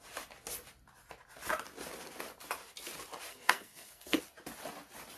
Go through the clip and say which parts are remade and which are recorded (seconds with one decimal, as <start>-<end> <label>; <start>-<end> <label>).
0.0-3.3 recorded; 3.3-4.2 remade; 4.2-5.2 recorded